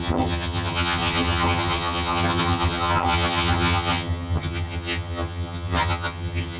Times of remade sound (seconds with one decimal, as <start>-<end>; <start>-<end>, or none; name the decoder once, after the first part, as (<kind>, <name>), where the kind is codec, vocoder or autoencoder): 0.0-6.6 (vocoder, HiFi-GAN)